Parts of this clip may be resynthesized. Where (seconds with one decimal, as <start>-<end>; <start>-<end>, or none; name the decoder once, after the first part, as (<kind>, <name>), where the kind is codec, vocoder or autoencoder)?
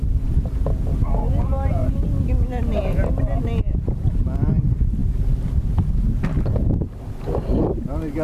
none